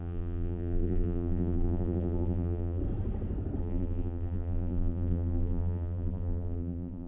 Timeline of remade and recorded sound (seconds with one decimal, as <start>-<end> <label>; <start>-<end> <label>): 0.0-2.8 remade; 2.8-3.6 recorded; 3.6-7.1 remade